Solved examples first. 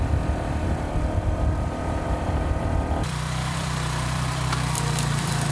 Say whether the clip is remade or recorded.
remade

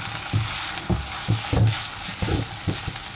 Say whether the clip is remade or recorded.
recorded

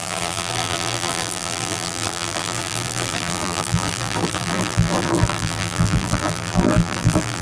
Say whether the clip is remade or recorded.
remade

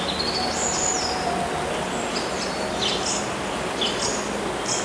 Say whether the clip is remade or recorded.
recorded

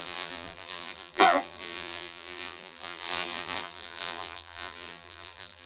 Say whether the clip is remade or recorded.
remade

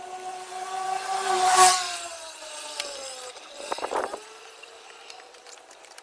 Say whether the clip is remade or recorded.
remade